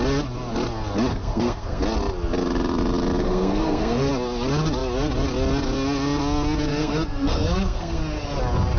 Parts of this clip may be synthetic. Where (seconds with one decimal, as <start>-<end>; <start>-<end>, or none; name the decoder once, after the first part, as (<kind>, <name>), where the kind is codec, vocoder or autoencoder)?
1.1-1.8 (codec, SNAC); 3.2-4.1; 6.7-8.0